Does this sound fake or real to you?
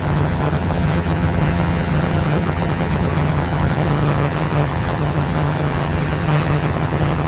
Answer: fake